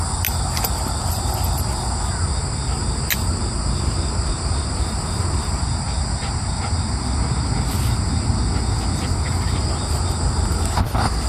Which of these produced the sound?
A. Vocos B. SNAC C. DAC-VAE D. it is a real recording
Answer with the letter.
D